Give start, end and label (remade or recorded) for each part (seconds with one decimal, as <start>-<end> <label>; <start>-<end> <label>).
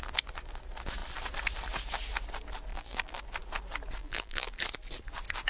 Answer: 0.0-2.7 recorded; 2.7-3.2 remade; 3.2-4.0 recorded; 4.0-4.5 remade; 4.5-5.5 recorded